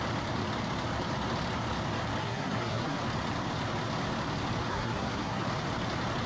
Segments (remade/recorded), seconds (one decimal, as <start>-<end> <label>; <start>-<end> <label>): 0.0-2.2 recorded; 2.2-3.0 remade; 3.0-4.7 recorded; 4.7-5.5 remade; 5.5-6.3 recorded